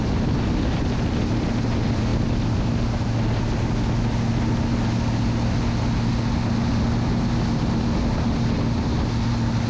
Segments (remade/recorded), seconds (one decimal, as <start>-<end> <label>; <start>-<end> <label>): 0.0-9.7 recorded